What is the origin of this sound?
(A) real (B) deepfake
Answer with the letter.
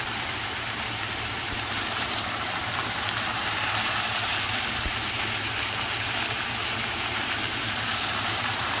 B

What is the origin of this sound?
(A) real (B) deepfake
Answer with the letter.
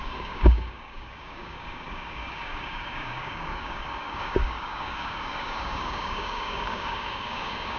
B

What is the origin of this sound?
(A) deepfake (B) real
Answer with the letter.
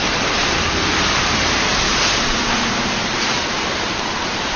A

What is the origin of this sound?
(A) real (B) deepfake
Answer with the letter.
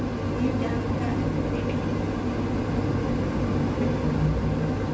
A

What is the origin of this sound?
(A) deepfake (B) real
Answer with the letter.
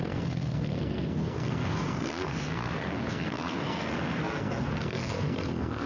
A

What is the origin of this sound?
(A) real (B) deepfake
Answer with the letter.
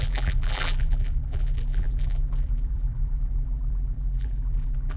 B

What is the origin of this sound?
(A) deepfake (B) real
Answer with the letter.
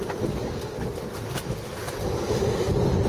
B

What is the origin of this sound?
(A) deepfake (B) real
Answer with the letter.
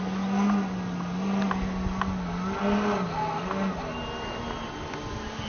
B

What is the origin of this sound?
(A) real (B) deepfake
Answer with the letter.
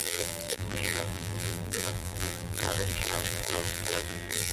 B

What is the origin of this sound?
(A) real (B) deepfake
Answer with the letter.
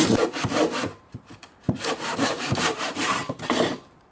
B